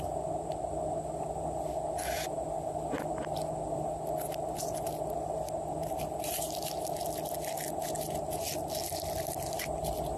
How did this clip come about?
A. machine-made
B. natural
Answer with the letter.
B